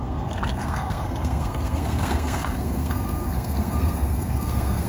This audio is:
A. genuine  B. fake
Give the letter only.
B